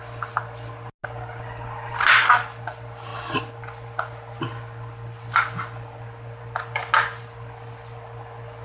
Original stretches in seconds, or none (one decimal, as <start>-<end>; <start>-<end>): 0.0-8.6